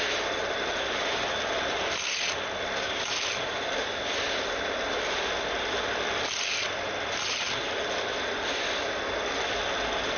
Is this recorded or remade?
recorded